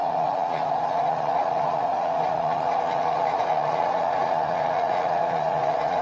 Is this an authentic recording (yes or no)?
no